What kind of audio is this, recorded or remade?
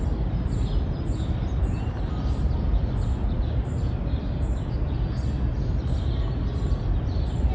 recorded